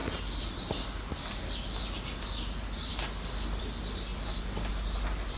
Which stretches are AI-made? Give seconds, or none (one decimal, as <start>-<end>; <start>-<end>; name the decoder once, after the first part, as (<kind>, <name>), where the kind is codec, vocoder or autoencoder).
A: none